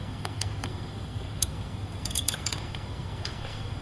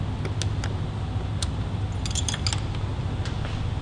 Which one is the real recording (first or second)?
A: second